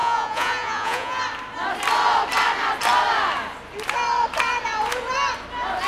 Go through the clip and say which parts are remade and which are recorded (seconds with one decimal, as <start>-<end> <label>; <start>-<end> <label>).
0.0-1.2 remade; 1.2-5.9 recorded